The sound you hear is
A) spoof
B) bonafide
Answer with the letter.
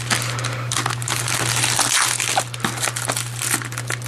B